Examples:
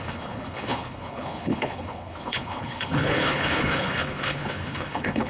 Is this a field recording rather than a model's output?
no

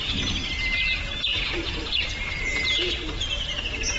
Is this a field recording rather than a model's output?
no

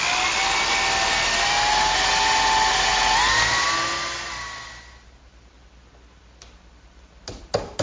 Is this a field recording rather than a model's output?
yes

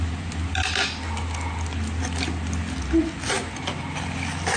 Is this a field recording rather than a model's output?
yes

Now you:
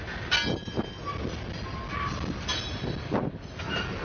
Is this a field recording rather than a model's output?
yes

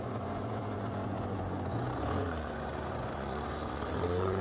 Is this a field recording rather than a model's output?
no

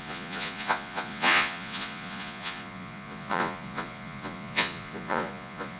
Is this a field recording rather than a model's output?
no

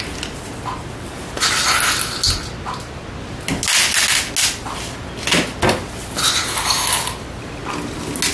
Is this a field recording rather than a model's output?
yes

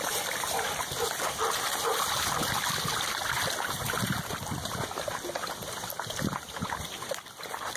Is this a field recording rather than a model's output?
yes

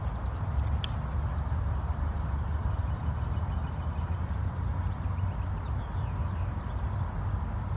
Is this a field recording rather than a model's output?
yes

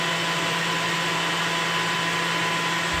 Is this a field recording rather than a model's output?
yes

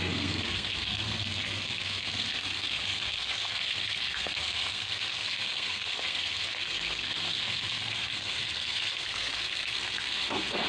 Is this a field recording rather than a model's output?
no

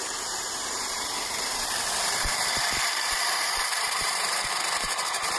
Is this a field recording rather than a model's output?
no